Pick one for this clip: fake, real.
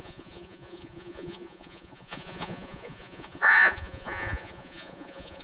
fake